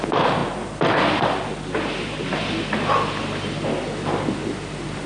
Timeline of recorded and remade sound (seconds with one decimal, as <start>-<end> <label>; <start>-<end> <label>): 0.0-4.4 recorded; 4.4-5.1 remade